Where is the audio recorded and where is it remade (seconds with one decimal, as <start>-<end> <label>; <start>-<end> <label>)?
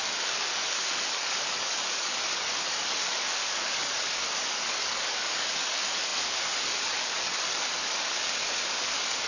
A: 0.0-9.3 remade